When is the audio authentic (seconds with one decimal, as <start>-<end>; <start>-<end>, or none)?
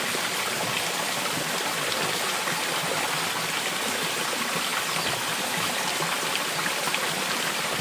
0.0-7.8